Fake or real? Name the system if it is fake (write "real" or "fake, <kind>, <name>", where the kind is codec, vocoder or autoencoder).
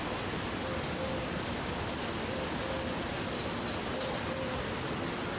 real